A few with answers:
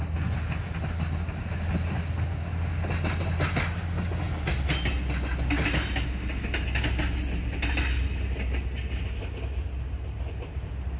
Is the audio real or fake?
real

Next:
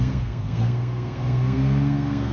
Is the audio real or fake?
fake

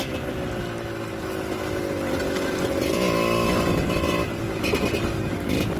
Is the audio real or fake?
real